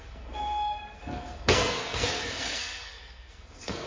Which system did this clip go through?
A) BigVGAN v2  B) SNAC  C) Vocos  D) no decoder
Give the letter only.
B